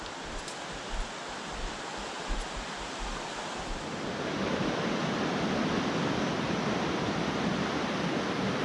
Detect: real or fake real